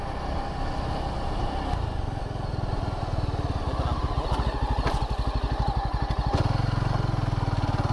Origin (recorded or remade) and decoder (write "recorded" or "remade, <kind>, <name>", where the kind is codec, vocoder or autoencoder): recorded